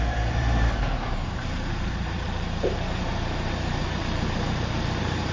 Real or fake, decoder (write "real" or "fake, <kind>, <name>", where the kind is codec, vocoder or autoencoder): fake, vocoder, BigVGAN v2